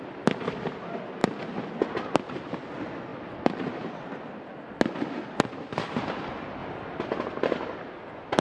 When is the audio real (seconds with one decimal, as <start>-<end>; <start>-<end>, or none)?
0.0-8.4